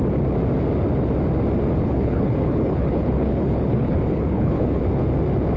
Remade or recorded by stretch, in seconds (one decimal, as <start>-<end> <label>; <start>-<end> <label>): 0.0-1.8 recorded; 1.8-4.8 remade; 4.8-5.6 recorded